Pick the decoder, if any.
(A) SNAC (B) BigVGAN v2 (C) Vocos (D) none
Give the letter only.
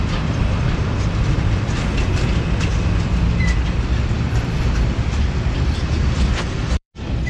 B